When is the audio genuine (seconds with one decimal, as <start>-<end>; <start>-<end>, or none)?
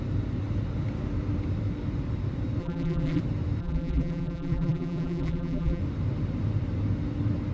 0.0-2.6; 3.2-3.6; 5.8-7.5